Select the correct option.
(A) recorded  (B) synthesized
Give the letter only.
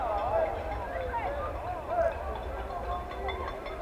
A